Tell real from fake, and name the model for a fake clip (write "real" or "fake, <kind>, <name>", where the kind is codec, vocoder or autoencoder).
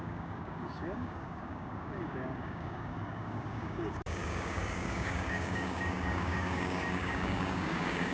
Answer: fake, codec, DAC